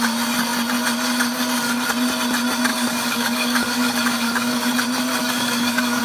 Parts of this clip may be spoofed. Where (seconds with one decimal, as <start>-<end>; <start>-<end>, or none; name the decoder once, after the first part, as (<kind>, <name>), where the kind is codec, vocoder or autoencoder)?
2.7-4.7 (codec, DAC); 5.2-6.0

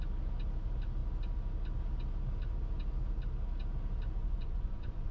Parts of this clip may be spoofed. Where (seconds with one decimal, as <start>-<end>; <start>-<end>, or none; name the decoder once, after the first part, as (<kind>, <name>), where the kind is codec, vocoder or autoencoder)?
4.2-5.1 (vocoder, Vocos)

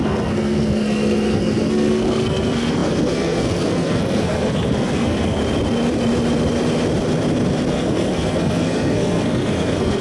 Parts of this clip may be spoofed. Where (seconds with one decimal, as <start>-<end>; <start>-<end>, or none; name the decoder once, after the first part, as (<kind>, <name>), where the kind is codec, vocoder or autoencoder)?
0.0-5.4 (codec, SNAC); 7.7-10.0

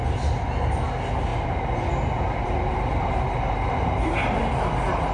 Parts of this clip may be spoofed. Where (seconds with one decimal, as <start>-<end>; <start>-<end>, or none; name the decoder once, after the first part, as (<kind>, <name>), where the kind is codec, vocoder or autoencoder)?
1.3-4.4 (vocoder, BigVGAN v2)

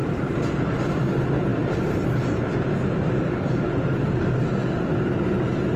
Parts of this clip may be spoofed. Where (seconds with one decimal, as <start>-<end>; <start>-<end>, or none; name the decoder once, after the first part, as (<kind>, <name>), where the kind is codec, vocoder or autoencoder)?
0.0-0.6 (vocoder, BigVGAN v2); 1.5-3.4